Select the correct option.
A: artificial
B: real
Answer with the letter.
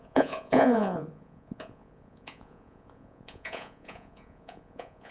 A